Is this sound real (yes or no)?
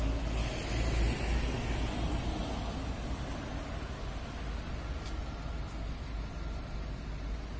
yes